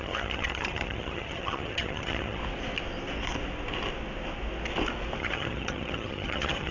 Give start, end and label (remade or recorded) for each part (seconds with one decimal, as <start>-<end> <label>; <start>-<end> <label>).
0.0-2.4 remade; 2.4-5.2 recorded; 5.2-6.7 remade